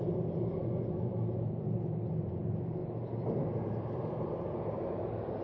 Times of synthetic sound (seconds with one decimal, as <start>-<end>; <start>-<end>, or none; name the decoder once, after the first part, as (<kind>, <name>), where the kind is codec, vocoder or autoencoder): 0.0-2.8 (vocoder, BigVGAN v2); 3.6-5.4